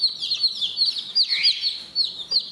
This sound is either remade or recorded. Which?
recorded